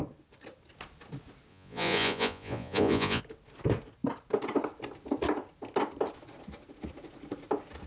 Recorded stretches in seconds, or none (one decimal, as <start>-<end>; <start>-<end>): 0.0-1.5; 3.2-7.9

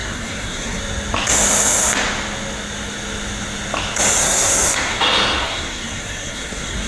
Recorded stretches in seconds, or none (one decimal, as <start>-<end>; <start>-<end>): 0.8-4.2; 5.0-5.4